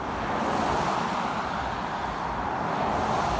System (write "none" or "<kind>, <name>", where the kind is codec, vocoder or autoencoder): none